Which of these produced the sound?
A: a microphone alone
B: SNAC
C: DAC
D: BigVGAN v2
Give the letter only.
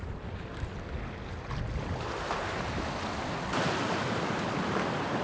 A